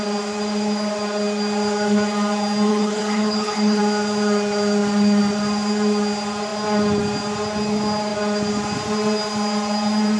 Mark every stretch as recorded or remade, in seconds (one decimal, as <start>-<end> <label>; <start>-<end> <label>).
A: 0.0-2.7 recorded; 2.7-3.8 remade; 3.8-10.2 recorded